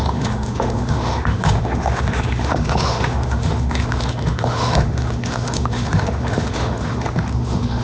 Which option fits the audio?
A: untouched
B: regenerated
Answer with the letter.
B